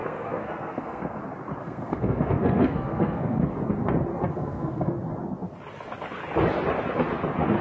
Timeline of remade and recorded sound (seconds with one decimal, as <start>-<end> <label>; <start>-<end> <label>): 0.0-1.2 remade; 1.2-1.6 recorded; 1.6-3.4 remade; 3.4-4.3 recorded; 4.3-4.9 remade; 4.9-7.6 recorded